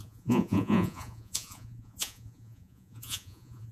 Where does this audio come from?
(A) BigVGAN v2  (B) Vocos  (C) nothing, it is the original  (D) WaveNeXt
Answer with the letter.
B